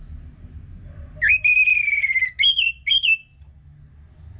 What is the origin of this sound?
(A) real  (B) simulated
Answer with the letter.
A